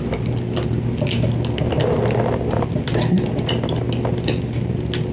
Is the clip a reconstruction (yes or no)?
no